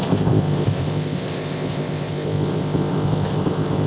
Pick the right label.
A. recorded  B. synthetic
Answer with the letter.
B